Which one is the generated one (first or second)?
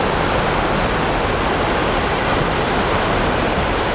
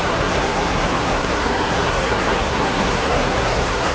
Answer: second